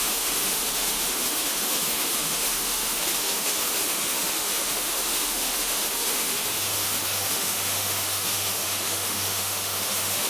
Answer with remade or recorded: remade